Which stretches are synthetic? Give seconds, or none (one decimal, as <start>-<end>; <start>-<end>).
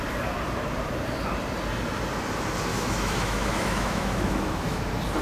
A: 2.7-4.8